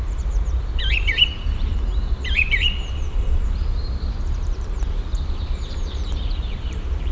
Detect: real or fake fake